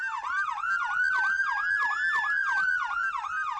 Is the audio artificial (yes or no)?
no